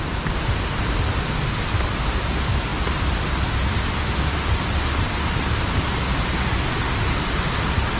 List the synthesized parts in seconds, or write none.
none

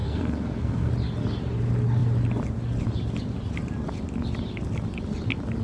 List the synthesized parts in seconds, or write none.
0.0-0.9 (codec, SNAC)

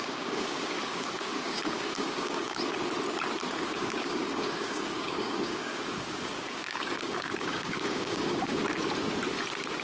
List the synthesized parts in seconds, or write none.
0.0-2.6 (codec, DAC); 3.5-8.6

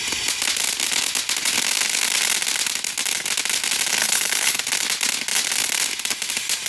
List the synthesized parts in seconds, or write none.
4.0-4.6 (codec, HILCodec)

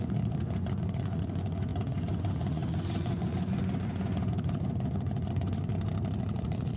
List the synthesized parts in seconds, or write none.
0.0-5.7 (vocoder, Vocos); 6.2-6.8